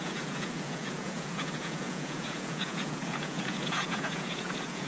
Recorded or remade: remade